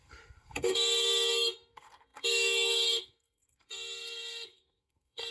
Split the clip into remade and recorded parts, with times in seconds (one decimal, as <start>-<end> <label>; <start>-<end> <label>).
0.0-5.3 remade